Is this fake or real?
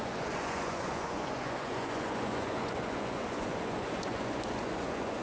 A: fake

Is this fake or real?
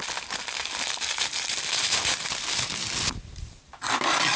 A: real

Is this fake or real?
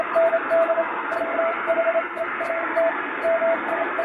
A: real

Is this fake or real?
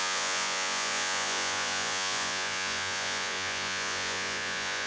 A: fake